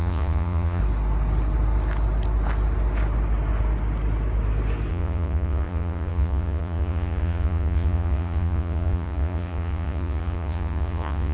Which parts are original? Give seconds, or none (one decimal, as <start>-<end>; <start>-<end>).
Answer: 0.8-4.9